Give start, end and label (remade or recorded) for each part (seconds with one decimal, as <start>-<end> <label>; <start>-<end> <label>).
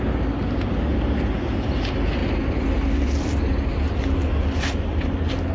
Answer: 0.0-5.5 recorded